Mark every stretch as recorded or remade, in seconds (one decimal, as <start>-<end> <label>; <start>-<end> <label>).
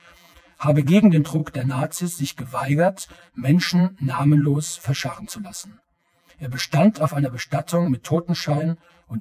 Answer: 0.0-9.2 remade